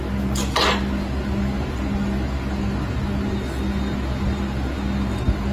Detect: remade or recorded recorded